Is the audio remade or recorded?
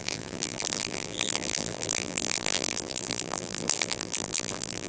remade